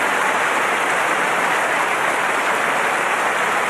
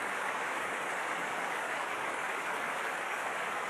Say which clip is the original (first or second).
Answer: first